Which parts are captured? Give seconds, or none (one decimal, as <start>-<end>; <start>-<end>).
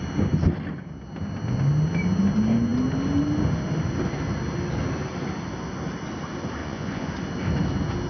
0.0-6.6; 7.1-8.1